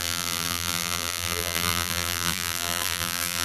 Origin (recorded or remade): remade